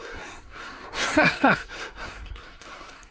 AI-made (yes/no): yes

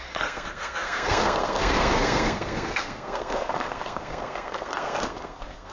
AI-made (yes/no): yes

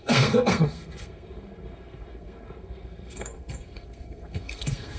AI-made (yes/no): yes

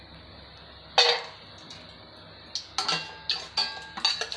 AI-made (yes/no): no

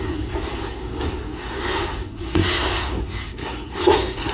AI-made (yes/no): yes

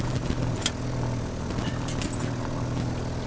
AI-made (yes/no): no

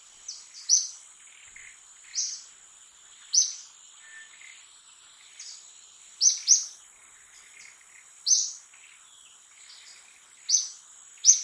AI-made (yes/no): no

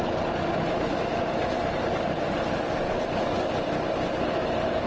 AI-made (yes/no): no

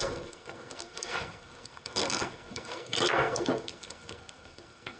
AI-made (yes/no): yes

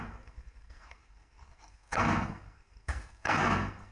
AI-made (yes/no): yes